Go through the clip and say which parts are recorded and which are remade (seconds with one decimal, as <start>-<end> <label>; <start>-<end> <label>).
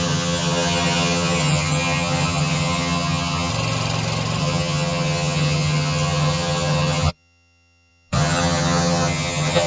0.0-3.5 remade; 3.5-4.4 recorded; 4.4-9.7 remade